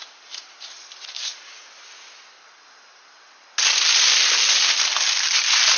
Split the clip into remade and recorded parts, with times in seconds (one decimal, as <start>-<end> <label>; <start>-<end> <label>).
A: 0.0-5.8 recorded